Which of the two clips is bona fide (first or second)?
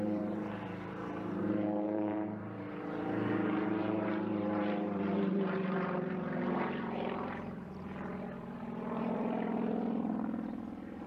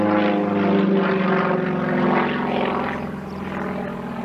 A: second